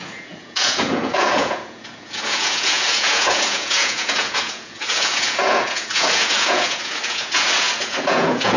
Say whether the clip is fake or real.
fake